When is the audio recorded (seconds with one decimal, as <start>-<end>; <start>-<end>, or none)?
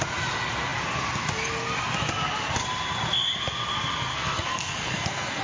0.0-4.1